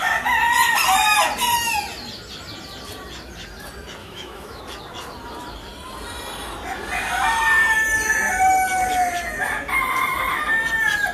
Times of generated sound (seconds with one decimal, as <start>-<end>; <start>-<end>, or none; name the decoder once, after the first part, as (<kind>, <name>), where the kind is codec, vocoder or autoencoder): 4.0-4.6 (autoencoder, DAC-VAE)